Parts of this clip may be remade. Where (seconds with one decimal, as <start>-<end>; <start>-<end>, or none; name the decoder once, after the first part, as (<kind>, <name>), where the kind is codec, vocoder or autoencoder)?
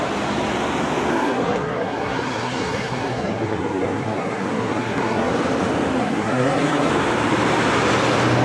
1.1-5.3 (codec, SNAC); 6.0-6.9